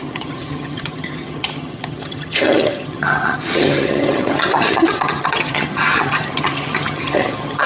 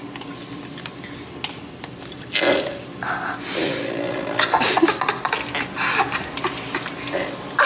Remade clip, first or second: first